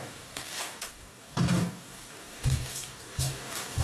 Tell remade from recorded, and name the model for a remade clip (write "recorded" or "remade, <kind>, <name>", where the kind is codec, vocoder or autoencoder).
remade, codec, DAC